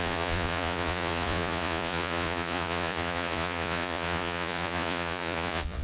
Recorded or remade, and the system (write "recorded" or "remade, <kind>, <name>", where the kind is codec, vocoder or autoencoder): remade, vocoder, Vocos